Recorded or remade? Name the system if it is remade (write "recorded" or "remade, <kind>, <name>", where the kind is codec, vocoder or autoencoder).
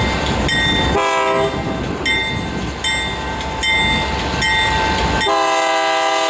recorded